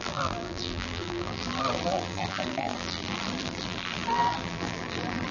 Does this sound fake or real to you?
fake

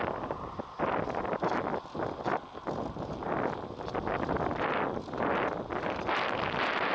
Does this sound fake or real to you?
real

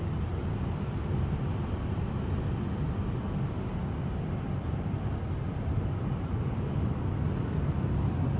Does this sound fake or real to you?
real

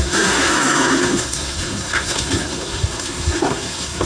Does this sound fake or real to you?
fake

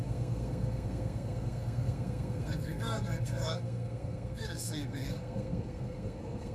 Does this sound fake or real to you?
fake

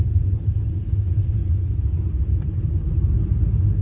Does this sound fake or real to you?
real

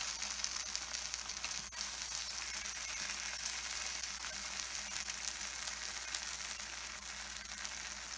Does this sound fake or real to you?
real